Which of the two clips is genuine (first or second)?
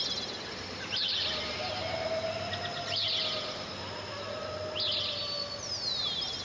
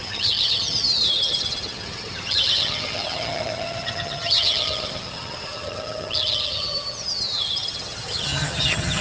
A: first